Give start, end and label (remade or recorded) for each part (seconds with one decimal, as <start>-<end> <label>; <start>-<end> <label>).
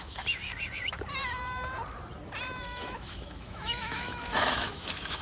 0.0-0.5 remade; 0.5-2.6 recorded; 2.6-5.2 remade